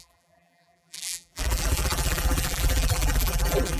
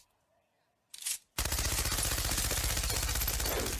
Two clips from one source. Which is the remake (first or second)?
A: first